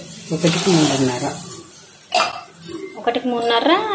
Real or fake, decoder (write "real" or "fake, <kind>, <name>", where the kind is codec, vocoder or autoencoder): real